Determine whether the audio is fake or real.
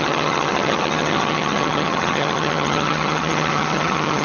fake